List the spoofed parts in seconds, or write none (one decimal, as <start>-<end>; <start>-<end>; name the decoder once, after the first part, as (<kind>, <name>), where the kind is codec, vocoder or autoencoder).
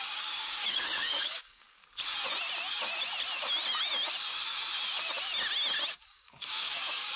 0.0-1.8 (codec, DAC); 6.1-7.2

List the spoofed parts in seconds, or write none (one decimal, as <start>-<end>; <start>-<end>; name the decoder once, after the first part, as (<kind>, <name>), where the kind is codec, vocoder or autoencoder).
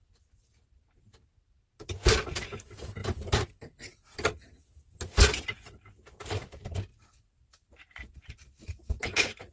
none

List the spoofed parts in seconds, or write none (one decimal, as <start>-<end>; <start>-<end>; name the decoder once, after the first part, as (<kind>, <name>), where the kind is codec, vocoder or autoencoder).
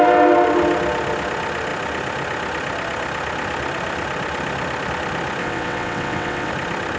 5.4-6.5 (vocoder, WaveNeXt)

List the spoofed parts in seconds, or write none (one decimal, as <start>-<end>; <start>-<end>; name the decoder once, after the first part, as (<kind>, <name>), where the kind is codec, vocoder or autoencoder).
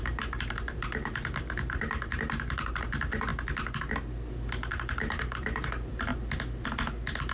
0.0-3.3 (vocoder, BigVGAN v2); 5.0-6.1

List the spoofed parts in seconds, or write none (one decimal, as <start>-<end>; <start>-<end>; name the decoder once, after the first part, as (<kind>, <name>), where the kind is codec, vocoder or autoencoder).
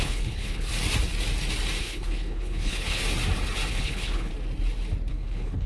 0.0-0.7 (codec, HILCodec); 1.8-3.0; 3.7-4.3; 5.1-5.7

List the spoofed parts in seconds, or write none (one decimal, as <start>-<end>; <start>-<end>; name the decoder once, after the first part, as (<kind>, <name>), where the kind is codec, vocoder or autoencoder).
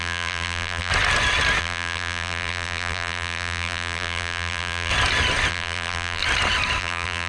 0.0-0.9 (vocoder, BigVGAN v2); 1.6-4.9; 5.5-6.2; 6.8-7.3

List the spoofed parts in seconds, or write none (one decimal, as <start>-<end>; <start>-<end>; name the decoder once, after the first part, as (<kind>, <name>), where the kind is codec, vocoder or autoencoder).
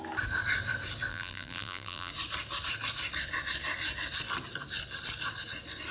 1.1-2.1 (vocoder, BigVGAN v2)